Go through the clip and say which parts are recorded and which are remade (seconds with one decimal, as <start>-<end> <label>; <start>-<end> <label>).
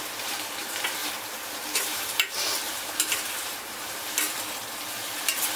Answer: 0.0-1.0 recorded; 1.0-4.4 remade; 4.4-5.0 recorded; 5.0-5.6 remade